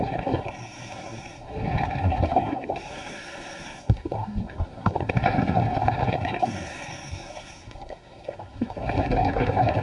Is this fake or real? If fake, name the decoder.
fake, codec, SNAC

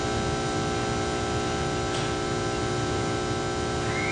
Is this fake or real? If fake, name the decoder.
real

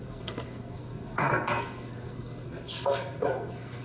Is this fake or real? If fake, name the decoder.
fake, codec, SNAC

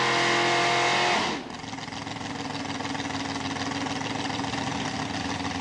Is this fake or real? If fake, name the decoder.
real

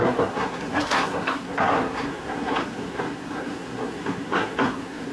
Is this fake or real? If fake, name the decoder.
fake, codec, SNAC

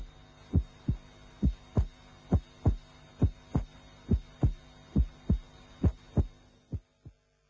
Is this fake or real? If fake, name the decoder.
real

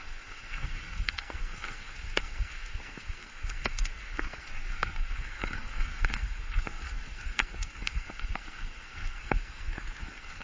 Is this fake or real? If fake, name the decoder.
fake, codec, SNAC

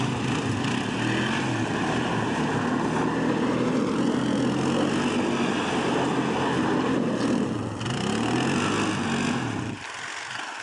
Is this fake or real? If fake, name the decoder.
real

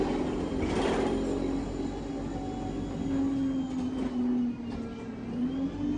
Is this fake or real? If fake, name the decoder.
real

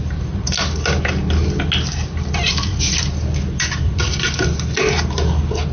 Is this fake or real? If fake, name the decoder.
real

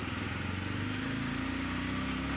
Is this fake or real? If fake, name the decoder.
real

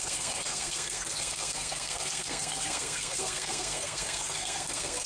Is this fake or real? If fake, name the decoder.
fake, codec, SNAC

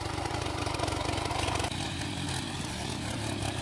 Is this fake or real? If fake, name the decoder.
real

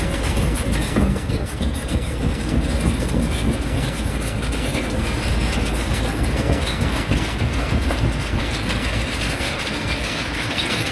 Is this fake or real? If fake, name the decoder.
fake, codec, SNAC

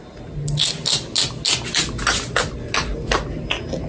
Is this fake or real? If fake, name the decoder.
real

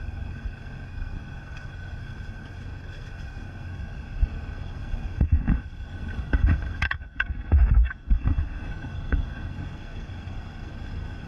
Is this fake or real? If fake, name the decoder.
fake, codec, SNAC